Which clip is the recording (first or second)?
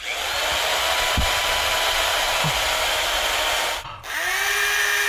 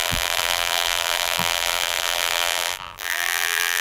first